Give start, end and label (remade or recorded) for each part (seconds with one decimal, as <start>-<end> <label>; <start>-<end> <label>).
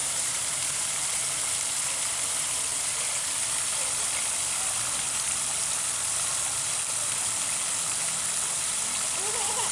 0.0-0.9 remade; 0.9-9.7 recorded